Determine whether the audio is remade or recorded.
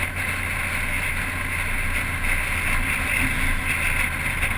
recorded